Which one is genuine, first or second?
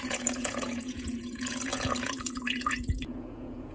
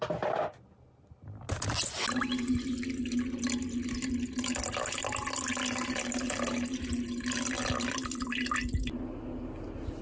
second